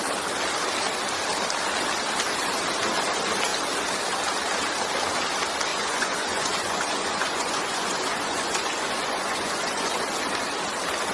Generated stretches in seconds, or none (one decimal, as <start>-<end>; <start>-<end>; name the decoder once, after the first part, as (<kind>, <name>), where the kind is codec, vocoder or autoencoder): 5.7-9.9 (vocoder, Vocos)